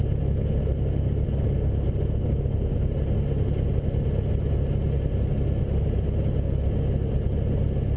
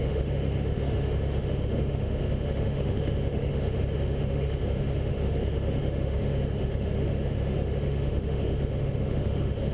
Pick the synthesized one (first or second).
second